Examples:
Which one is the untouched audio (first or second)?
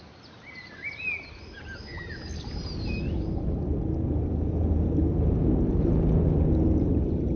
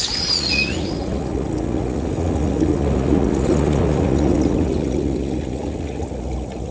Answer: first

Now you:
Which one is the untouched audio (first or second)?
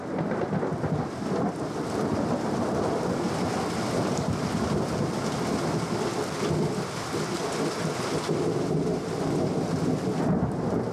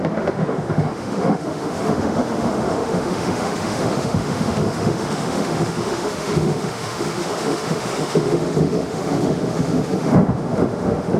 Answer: first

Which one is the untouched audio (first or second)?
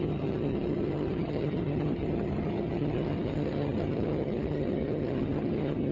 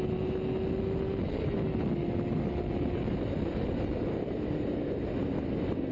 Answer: second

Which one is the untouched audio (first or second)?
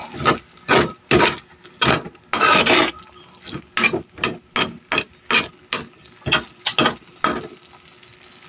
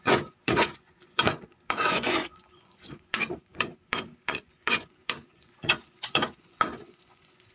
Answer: first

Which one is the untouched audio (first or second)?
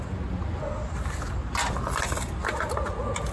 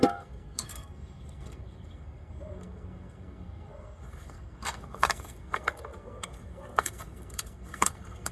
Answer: first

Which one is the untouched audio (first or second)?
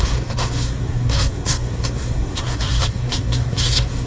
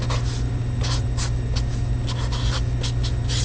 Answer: second